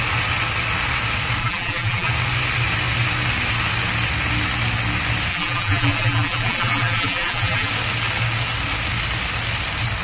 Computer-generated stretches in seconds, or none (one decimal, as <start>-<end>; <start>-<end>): 1.4-2.1; 5.3-7.7